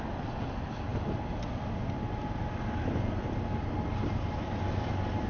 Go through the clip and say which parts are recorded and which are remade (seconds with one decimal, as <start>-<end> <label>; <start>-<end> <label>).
0.0-5.3 recorded